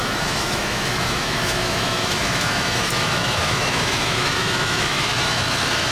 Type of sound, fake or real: fake